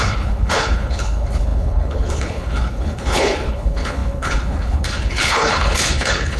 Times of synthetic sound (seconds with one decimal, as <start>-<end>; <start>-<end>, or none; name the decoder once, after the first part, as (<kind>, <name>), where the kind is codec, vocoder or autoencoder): 0.0-6.4 (codec, HILCodec)